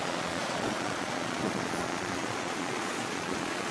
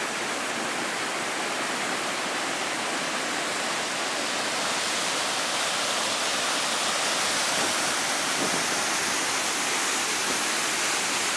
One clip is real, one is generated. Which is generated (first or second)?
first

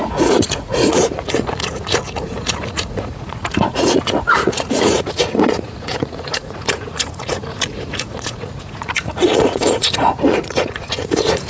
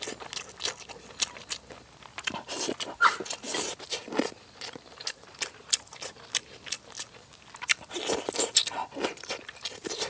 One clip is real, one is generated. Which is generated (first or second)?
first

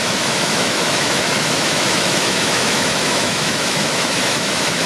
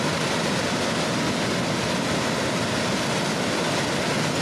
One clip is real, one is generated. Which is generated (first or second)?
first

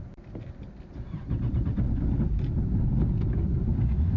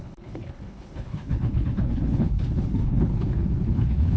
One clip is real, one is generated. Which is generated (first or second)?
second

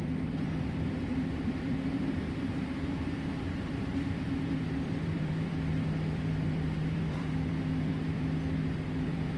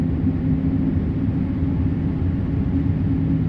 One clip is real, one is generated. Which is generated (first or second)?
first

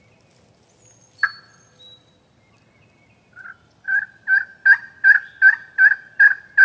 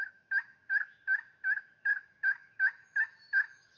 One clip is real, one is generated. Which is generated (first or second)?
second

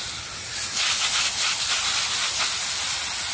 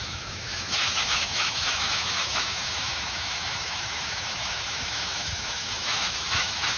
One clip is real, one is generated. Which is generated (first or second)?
second